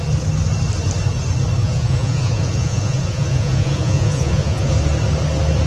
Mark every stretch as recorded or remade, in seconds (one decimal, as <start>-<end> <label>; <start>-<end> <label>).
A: 0.0-1.6 recorded; 1.6-4.7 remade; 4.7-5.7 recorded